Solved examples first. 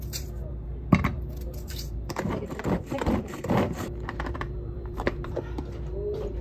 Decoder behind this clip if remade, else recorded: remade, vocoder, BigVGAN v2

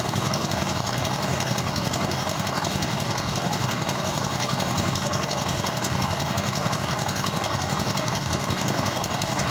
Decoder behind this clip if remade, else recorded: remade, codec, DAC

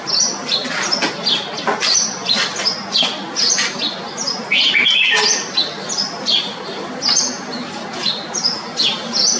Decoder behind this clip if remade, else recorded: recorded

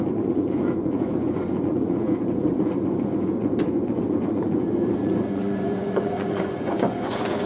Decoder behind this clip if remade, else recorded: remade, vocoder, Vocos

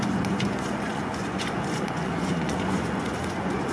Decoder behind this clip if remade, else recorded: remade, vocoder, Vocos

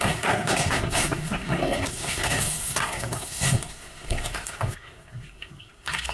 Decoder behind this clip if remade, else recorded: remade, codec, SNAC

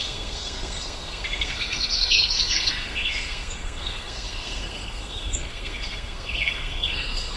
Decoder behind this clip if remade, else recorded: remade, codec, SNAC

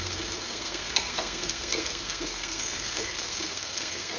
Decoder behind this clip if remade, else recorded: remade, codec, SNAC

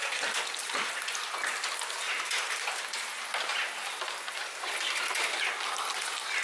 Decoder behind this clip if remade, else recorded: recorded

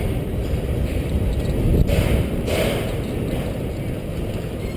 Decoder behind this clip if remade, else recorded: recorded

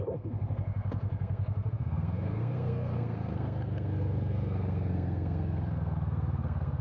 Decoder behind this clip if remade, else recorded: remade, codec, SNAC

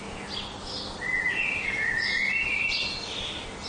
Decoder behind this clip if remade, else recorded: recorded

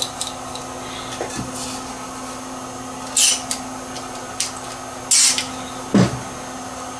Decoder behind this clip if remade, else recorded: recorded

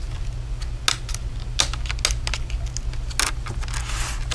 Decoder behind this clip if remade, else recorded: recorded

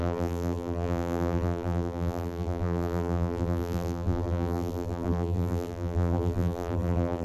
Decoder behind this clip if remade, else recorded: remade, vocoder, BigVGAN v2